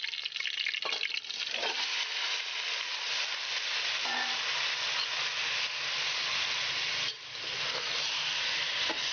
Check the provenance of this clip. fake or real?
real